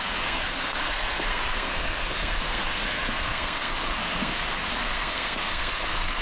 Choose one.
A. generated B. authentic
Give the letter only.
A